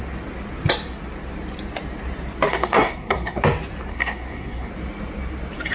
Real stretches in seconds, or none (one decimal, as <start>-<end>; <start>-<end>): 0.0-2.5; 3.4-3.9; 4.7-5.7